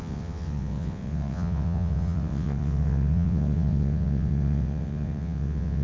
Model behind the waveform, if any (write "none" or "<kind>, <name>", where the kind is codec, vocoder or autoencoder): vocoder, WaveNeXt